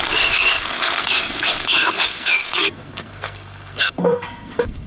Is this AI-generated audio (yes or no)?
yes